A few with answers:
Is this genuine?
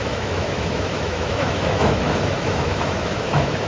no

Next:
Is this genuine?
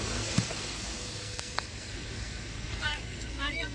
no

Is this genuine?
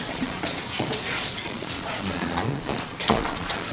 no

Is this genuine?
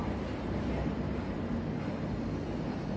no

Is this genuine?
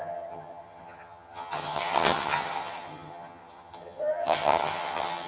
no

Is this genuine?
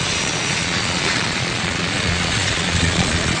no